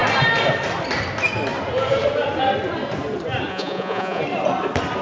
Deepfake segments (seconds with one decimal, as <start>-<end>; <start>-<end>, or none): 3.5-4.2